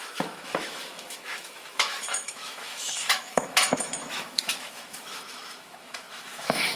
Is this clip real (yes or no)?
no